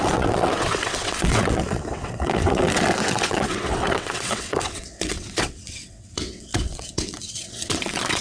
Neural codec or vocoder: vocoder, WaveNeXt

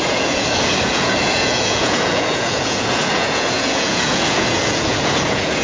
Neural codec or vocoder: vocoder, Vocos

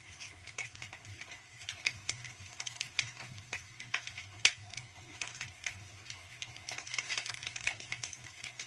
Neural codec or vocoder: codec, SNAC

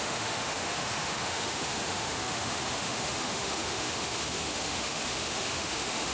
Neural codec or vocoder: autoencoder, DAC-VAE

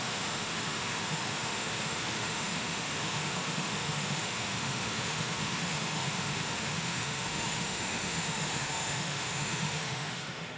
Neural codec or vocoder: autoencoder, DAC-VAE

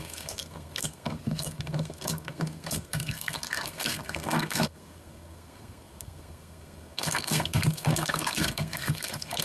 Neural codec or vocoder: codec, SNAC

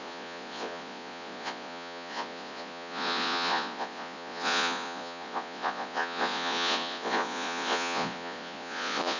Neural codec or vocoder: vocoder, Vocos